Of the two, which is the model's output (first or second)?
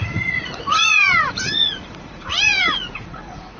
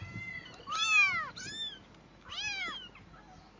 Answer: first